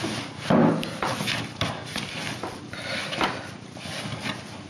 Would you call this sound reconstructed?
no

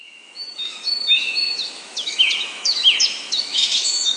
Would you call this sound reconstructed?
yes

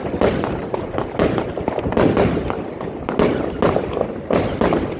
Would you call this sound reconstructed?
no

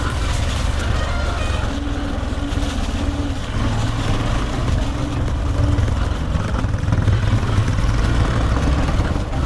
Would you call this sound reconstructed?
no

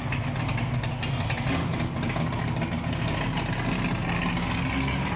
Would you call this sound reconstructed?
no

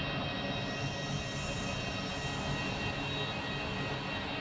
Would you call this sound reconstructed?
no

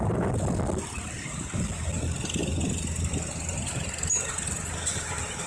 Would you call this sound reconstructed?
no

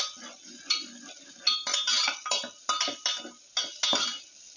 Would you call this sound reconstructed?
no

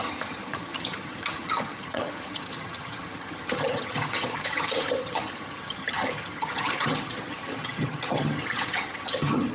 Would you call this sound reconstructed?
yes